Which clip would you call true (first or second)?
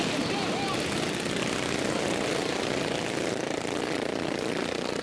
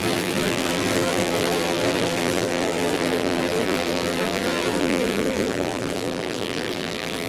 first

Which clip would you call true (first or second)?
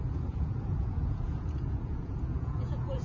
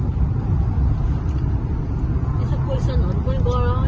second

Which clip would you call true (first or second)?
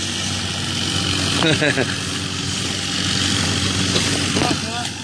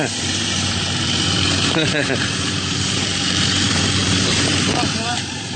first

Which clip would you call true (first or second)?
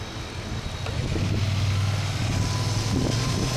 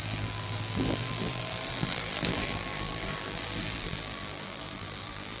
first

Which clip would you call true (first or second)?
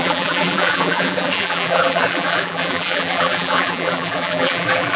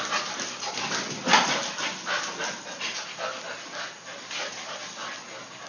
second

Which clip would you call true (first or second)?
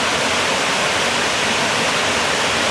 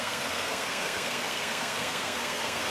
first